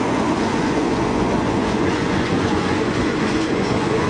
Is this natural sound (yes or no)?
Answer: no